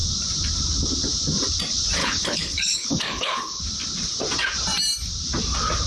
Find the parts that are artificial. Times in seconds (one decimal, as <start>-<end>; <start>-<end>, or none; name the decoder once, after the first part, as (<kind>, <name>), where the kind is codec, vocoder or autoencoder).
2.0-3.6 (codec, HILCodec)